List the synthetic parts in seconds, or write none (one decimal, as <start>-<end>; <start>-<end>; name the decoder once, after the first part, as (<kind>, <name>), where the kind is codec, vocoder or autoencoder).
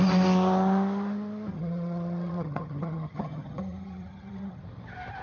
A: 1.5-4.6 (vocoder, HiFi-GAN)